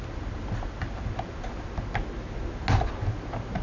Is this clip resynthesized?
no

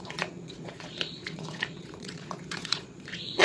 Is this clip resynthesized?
yes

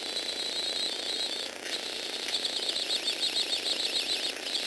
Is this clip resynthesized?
no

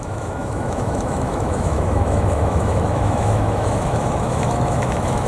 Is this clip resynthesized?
yes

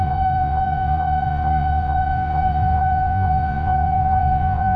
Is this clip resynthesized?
yes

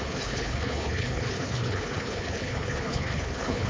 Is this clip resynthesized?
yes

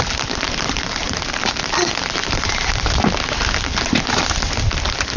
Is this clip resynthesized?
no